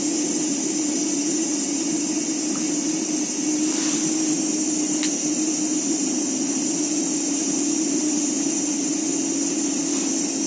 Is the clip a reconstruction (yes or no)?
no